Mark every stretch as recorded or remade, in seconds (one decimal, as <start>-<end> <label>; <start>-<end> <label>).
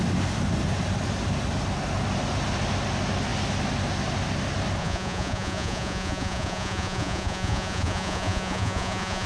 0.0-4.8 recorded; 4.8-9.3 remade